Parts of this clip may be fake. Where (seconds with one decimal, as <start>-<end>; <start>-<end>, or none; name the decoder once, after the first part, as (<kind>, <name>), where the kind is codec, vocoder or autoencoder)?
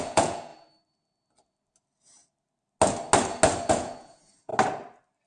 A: 0.0-0.5 (vocoder, Vocos); 3.7-4.5